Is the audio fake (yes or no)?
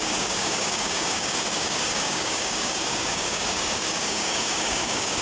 yes